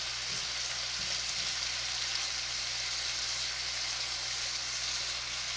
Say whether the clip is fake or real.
real